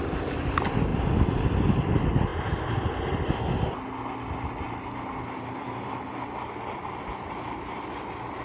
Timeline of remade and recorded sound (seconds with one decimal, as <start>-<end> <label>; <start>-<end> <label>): 0.0-8.4 recorded